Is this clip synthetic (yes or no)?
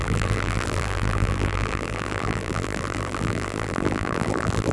yes